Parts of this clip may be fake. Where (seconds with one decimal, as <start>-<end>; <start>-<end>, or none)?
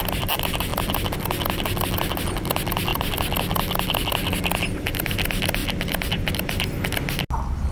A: none